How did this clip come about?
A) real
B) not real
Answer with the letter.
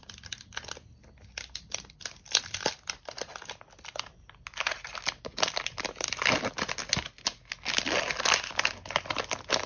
A